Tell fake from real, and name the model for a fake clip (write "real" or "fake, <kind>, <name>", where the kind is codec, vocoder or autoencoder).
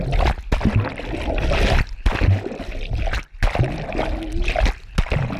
real